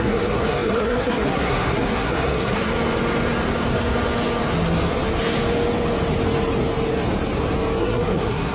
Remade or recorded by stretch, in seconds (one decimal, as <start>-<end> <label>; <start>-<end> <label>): 0.0-2.7 remade; 2.7-7.8 recorded; 7.8-8.5 remade